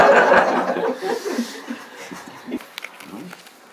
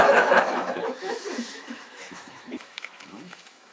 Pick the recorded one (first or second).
first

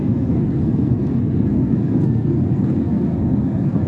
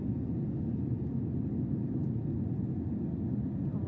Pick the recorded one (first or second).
second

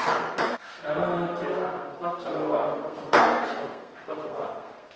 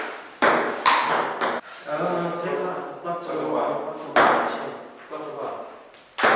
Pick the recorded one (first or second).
second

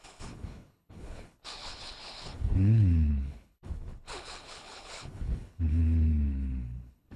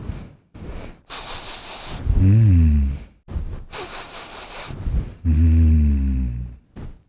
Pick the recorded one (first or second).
second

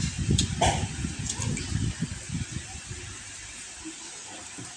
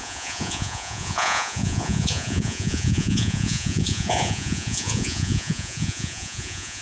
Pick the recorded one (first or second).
first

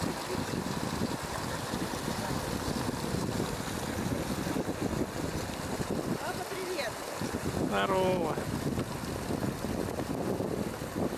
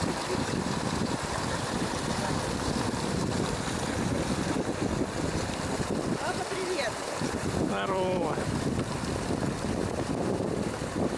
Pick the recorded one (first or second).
first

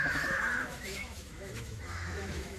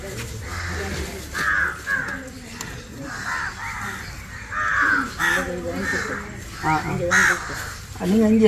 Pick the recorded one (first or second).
second